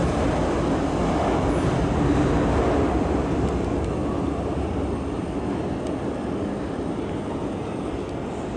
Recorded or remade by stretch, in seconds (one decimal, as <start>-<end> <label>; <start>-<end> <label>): 0.0-8.6 recorded